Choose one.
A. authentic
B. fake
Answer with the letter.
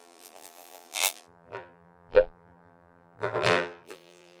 B